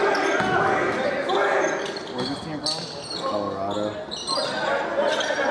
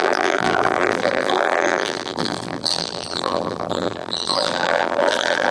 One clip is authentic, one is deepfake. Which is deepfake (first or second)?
second